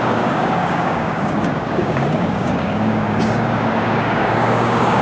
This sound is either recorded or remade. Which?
remade